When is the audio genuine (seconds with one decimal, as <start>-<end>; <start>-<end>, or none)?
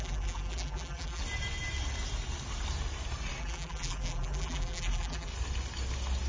1.2-3.4; 5.3-6.3